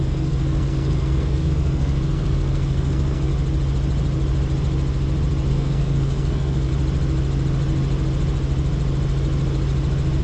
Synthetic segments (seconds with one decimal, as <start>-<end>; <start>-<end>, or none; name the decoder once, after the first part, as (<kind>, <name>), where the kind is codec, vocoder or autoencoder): 0.0-3.3 (codec, SNAC); 5.5-6.7

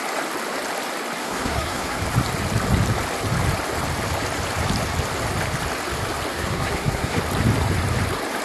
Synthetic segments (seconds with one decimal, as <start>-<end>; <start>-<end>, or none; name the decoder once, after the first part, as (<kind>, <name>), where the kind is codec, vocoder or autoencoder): 1.2-2.0 (codec, SNAC); 6.3-7.2

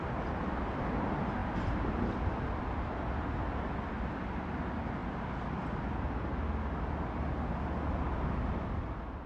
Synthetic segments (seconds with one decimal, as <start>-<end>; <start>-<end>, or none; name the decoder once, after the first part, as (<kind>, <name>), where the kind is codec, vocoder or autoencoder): none

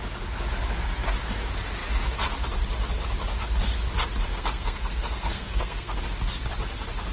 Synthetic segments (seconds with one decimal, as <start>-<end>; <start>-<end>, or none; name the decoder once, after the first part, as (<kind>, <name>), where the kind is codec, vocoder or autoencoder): 4.3-6.0 (codec, SNAC)